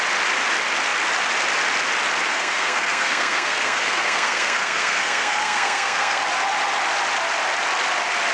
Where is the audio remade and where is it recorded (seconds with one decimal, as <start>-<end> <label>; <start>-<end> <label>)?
0.0-2.3 recorded; 2.3-6.2 remade; 6.2-8.3 recorded